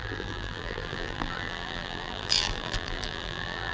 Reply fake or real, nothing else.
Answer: fake